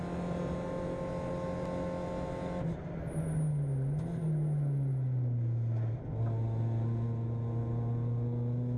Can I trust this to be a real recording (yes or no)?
yes